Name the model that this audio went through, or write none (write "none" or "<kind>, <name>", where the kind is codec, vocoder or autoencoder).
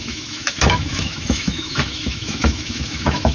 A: autoencoder, DAC-VAE